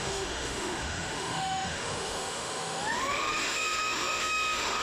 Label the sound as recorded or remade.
remade